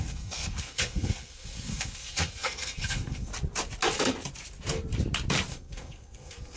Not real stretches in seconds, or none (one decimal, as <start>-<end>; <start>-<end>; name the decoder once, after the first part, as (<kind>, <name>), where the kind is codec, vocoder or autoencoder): 0.0-3.3 (codec, SNAC); 5.5-6.6